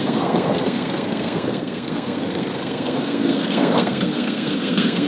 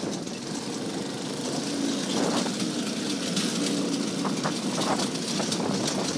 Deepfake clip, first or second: first